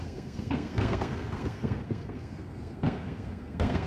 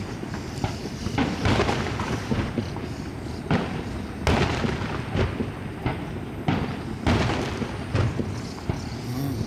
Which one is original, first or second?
second